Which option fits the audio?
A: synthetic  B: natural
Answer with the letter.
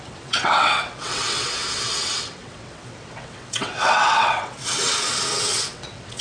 A